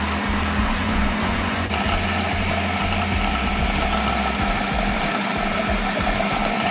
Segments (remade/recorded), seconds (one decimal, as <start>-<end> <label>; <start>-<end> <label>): 0.0-0.6 recorded; 0.6-1.7 remade; 1.7-6.7 recorded